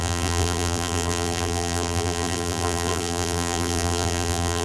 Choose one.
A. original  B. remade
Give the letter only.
B